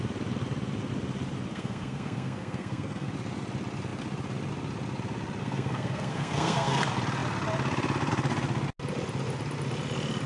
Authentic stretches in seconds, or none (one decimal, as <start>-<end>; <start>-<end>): 0.0-1.5; 3.1-5.4; 6.8-10.3